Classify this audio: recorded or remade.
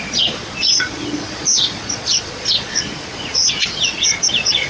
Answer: remade